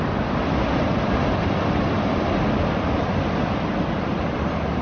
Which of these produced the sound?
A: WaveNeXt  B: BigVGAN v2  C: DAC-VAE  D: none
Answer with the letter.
D